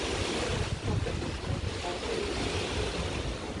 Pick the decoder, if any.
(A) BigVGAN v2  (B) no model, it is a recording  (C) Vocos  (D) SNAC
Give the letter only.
B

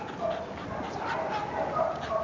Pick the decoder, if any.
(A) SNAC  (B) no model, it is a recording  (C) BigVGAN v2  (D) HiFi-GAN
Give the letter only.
B